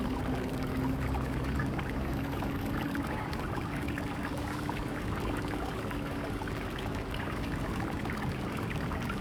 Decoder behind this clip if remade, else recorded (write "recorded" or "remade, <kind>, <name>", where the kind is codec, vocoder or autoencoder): remade, codec, DAC